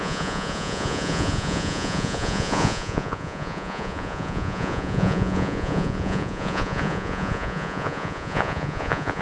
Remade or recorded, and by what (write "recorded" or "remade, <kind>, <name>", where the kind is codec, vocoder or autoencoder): remade, vocoder, Vocos